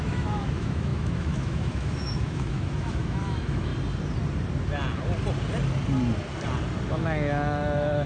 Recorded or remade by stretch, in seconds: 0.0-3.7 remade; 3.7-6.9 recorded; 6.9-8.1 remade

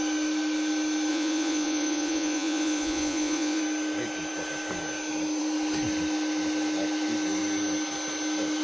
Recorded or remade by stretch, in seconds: 0.0-1.1 recorded; 1.1-3.6 remade; 3.6-8.6 recorded

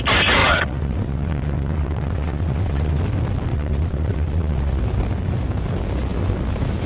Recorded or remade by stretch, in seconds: 0.0-0.4 recorded; 0.4-3.0 remade; 3.0-3.5 recorded; 3.5-4.8 remade; 4.8-6.9 recorded

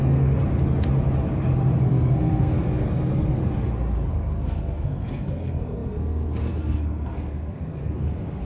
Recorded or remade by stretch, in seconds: 0.0-0.4 remade; 0.4-1.8 recorded; 1.8-3.4 remade; 3.4-4.1 recorded; 4.1-8.4 remade

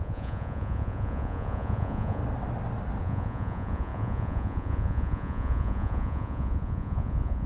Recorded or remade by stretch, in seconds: 0.0-2.2 remade; 2.2-3.0 recorded; 3.0-7.5 remade

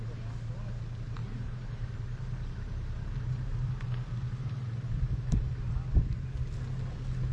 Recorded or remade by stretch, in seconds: 0.0-1.2 recorded; 1.2-5.6 remade; 5.6-7.3 recorded